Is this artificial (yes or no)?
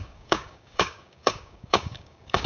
yes